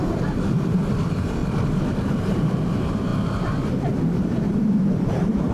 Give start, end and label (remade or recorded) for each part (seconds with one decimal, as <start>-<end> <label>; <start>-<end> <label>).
0.0-1.4 remade; 1.4-2.2 recorded; 2.2-5.5 remade